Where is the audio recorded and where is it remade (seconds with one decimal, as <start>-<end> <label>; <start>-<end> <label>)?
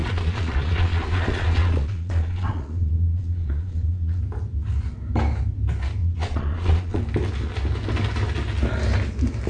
0.0-4.2 remade; 4.2-6.0 recorded; 6.0-7.0 remade; 7.0-9.5 recorded